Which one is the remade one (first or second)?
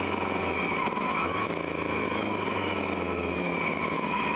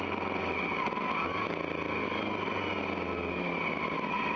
first